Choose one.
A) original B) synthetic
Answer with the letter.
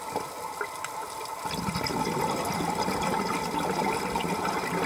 A